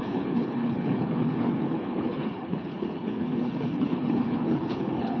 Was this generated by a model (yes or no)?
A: yes